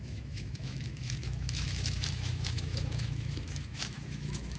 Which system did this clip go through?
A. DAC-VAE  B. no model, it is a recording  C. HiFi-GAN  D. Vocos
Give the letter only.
A